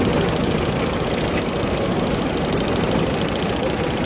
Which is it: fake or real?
real